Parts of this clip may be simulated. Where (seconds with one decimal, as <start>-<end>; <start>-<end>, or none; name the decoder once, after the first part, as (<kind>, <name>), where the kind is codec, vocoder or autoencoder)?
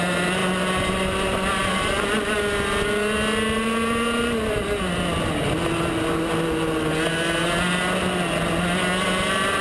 none